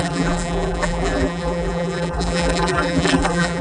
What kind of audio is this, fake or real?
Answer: fake